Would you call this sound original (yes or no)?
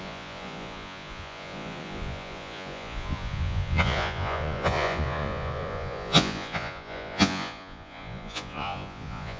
no